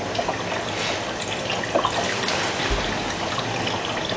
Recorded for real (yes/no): yes